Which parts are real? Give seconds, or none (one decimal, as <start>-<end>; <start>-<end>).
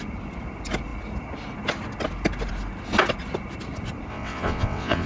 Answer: 0.0-4.1